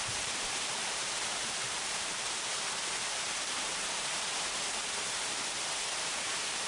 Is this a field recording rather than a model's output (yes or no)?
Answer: no